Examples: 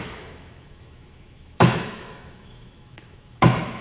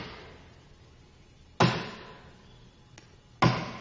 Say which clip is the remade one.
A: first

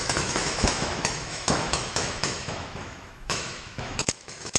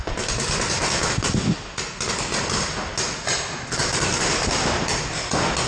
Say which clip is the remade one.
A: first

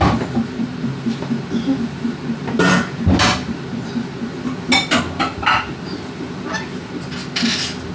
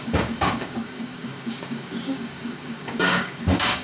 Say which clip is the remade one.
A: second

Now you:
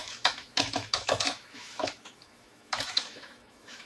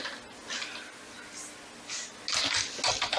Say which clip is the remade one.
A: first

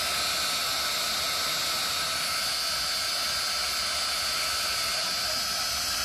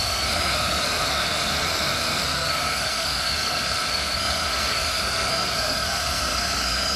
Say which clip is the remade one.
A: second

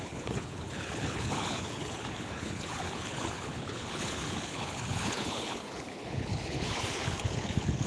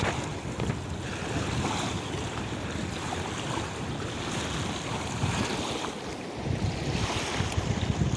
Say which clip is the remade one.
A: first